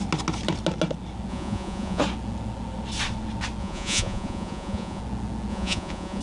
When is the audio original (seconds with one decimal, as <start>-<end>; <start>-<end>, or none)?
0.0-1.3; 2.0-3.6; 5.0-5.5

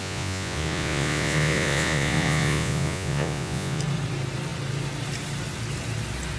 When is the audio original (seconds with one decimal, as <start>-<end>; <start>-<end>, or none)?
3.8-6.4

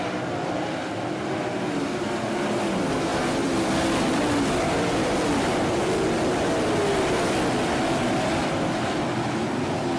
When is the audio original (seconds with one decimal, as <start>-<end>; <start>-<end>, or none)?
0.0-10.0

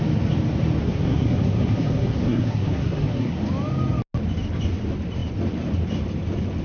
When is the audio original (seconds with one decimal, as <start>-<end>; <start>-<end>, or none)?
0.0-0.8; 3.4-6.6